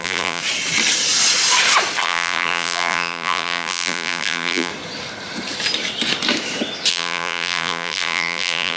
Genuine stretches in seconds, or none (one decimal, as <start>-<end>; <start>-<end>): 0.4-2.0; 4.7-6.9